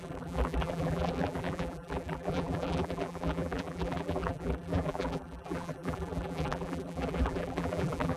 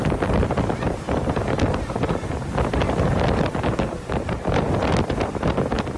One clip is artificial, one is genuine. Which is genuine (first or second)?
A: second